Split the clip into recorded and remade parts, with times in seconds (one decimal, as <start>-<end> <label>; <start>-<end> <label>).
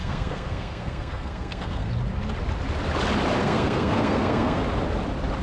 0.0-1.9 remade; 1.9-3.4 recorded; 3.4-4.6 remade; 4.6-5.4 recorded